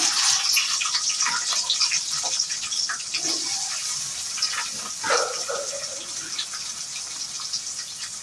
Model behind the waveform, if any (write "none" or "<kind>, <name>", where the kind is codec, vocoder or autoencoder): none